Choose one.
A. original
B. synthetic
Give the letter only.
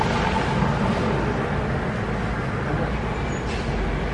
A